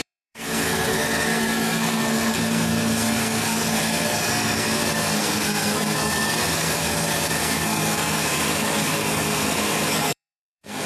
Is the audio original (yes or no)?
no